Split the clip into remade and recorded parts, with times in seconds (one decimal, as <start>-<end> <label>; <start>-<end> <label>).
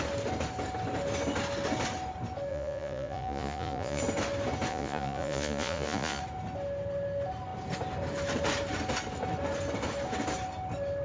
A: 0.0-2.5 recorded; 2.5-4.0 remade; 4.0-4.7 recorded; 4.7-6.2 remade; 6.2-11.0 recorded